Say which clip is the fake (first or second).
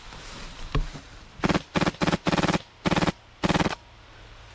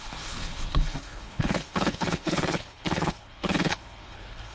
second